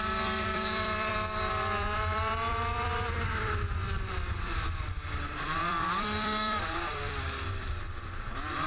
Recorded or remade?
remade